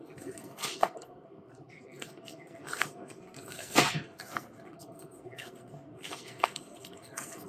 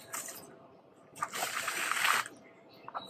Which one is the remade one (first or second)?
first